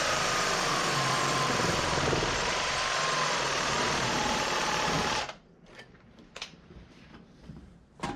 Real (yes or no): no